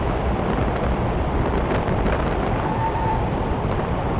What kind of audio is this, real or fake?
fake